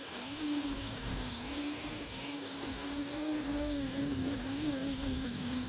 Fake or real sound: fake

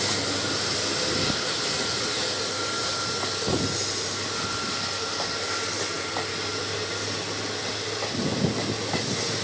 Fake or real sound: real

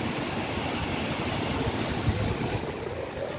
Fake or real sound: real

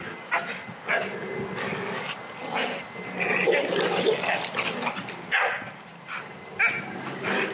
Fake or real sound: real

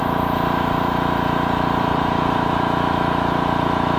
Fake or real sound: fake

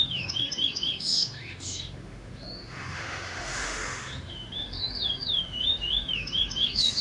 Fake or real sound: fake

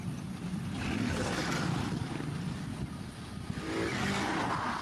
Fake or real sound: real